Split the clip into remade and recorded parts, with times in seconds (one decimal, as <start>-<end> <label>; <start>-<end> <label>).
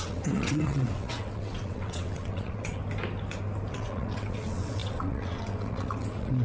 0.0-2.8 remade; 2.8-3.7 recorded; 3.7-6.4 remade